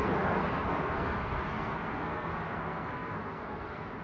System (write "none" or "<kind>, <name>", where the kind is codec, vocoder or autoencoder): codec, SNAC